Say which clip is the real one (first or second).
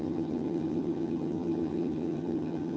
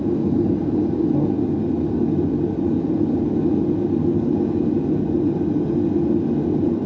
second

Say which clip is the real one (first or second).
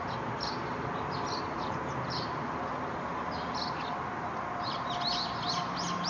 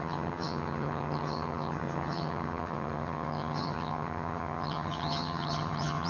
first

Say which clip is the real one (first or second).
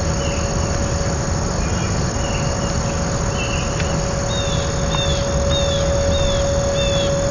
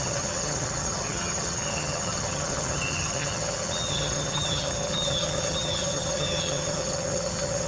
first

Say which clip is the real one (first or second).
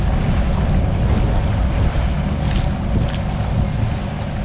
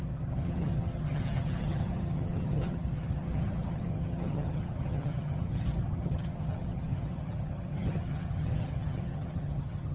first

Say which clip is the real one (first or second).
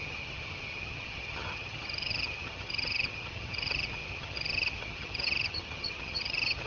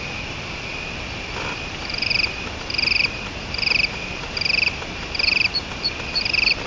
second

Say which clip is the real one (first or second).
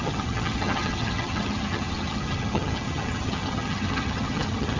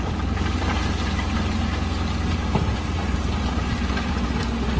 second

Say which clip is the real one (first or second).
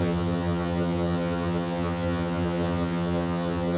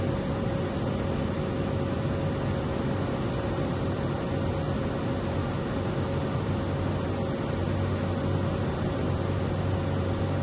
second